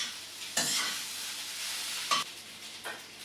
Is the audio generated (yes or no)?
no